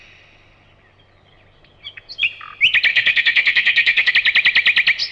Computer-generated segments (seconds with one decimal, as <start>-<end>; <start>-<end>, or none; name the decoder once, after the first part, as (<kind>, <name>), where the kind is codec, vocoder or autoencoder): 2.9-4.1 (codec, SNAC)